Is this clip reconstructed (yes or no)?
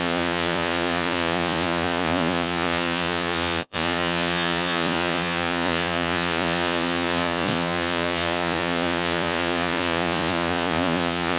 yes